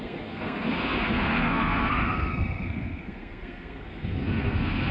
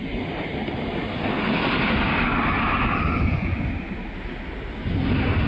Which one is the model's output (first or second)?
first